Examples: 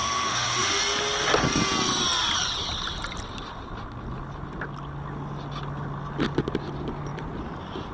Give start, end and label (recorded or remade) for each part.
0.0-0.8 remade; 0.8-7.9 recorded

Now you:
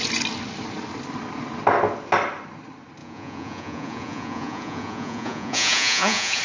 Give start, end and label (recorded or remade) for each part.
0.0-3.0 recorded; 3.0-6.4 remade

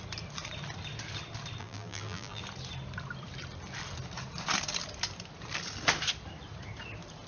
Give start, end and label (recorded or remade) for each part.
0.0-1.6 recorded; 1.6-2.4 remade; 2.4-7.3 recorded

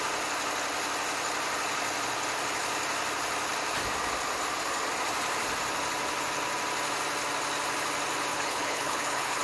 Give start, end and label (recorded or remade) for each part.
0.0-8.3 recorded; 8.3-9.4 remade

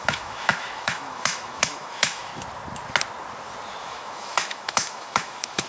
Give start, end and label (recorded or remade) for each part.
0.0-2.3 remade; 2.3-3.8 recorded; 3.8-5.7 remade

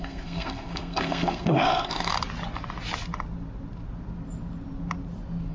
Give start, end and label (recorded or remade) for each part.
0.0-2.1 remade; 2.1-5.5 recorded

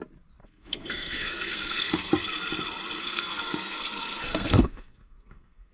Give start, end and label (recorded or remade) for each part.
0.0-0.4 recorded; 0.4-2.1 remade; 2.1-3.0 recorded; 3.0-5.7 remade

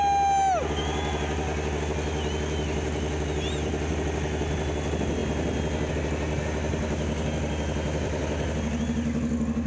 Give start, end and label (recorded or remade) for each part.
0.0-9.7 recorded